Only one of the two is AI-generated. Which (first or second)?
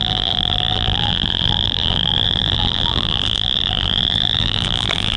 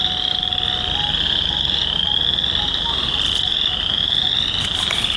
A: first